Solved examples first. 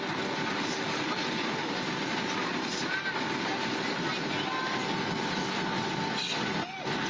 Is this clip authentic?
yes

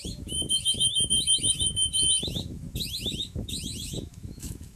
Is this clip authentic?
no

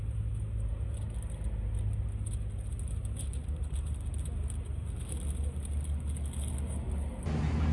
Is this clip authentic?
yes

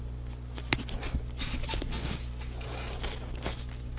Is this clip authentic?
yes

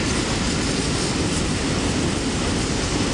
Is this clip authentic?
yes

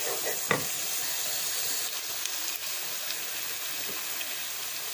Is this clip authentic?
yes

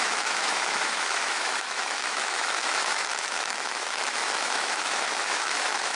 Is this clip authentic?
no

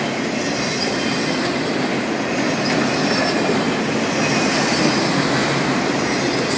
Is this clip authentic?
yes